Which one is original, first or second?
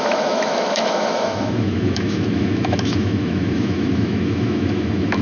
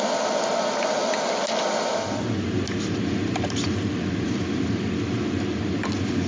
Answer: second